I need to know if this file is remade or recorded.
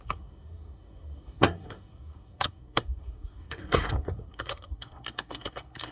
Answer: remade